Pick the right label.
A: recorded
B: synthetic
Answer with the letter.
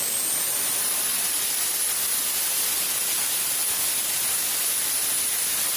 A